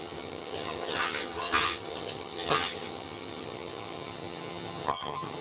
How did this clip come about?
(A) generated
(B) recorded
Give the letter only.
A